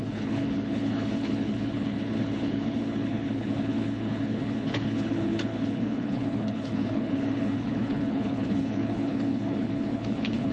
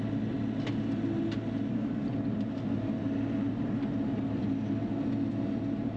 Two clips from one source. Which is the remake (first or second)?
first